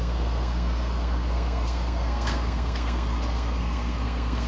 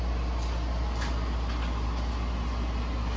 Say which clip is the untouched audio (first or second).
second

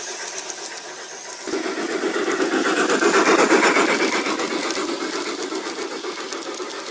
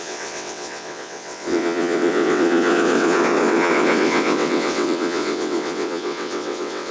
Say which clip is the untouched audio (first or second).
first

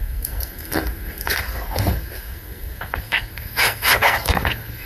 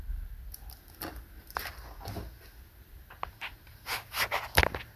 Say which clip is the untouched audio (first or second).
second